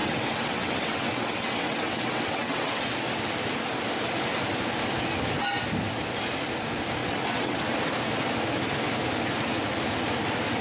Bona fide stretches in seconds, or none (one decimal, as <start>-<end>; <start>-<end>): 2.8-7.0; 7.6-10.6